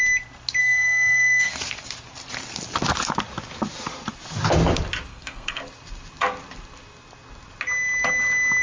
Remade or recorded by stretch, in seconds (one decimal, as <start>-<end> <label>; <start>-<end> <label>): 0.0-0.6 recorded; 0.6-1.6 remade; 1.6-5.1 recorded; 5.1-5.6 remade; 5.6-8.6 recorded